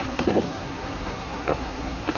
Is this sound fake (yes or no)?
yes